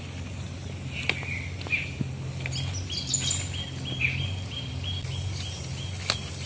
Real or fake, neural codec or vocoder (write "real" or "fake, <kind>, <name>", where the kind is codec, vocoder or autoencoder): real